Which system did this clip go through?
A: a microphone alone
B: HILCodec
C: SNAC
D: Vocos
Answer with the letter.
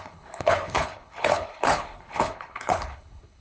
B